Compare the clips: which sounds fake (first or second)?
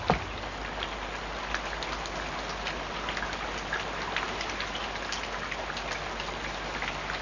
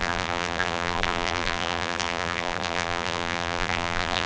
second